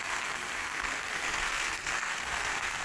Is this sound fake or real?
fake